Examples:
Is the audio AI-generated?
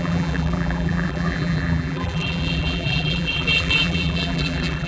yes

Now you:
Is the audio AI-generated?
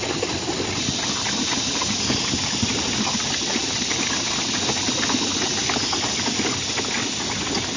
no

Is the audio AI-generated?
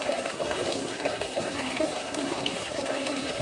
yes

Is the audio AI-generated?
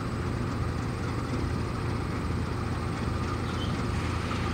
no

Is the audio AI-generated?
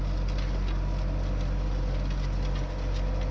no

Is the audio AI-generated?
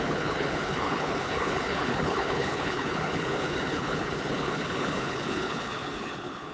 yes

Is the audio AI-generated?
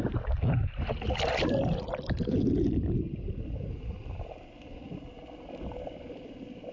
no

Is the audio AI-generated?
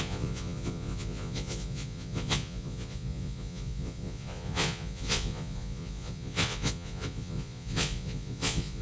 yes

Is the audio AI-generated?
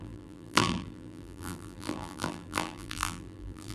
yes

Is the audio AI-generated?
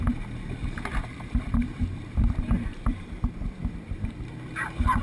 yes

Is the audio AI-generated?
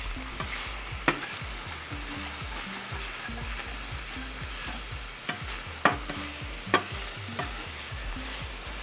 no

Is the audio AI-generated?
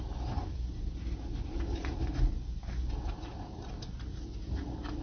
no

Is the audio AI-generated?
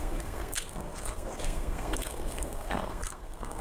yes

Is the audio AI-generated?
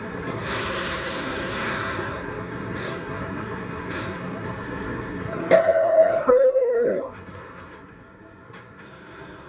yes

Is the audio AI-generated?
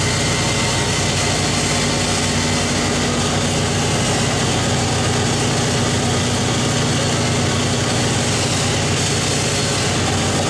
no